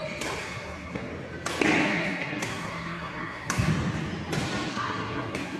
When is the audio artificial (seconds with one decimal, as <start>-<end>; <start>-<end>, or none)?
0.4-1.1; 1.8-3.7; 4.7-5.6